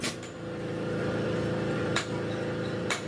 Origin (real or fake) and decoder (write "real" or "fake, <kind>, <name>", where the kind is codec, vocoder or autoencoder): fake, vocoder, BigVGAN v2